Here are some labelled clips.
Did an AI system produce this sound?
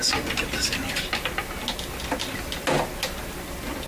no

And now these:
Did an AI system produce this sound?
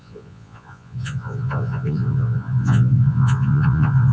yes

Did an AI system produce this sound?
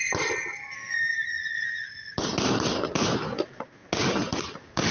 no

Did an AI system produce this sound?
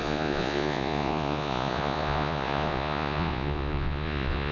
yes